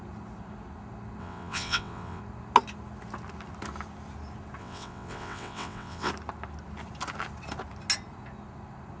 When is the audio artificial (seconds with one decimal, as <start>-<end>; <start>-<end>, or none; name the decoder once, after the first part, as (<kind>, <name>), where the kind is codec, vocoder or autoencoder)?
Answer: 1.2-2.2 (vocoder, WaveNeXt); 4.6-6.1